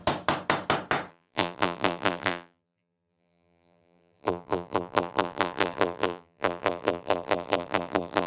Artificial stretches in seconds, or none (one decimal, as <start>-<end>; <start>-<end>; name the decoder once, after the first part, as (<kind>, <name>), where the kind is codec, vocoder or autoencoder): 1.1-8.3 (vocoder, BigVGAN v2)